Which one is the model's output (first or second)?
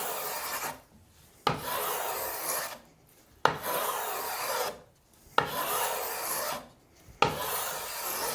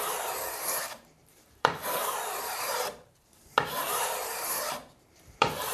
second